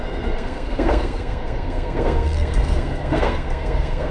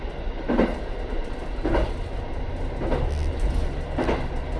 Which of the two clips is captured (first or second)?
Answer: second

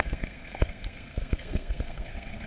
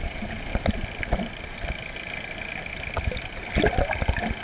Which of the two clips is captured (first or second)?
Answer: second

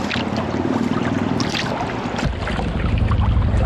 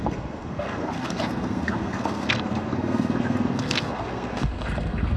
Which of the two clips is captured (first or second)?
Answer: first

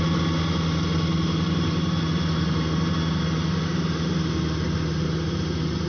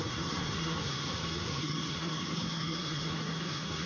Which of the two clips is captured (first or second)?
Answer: first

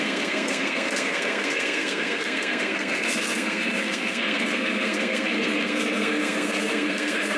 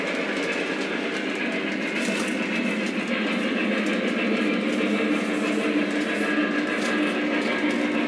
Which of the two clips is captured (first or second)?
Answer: second